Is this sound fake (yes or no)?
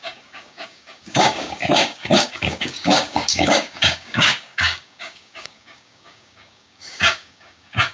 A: yes